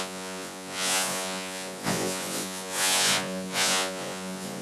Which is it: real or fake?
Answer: fake